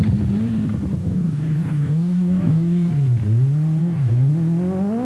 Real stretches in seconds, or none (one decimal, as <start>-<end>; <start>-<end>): 0.0-1.0; 2.9-3.8; 4.3-5.0